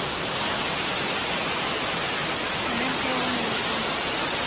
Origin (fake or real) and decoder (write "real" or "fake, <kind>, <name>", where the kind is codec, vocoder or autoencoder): real